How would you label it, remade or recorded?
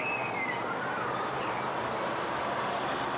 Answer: recorded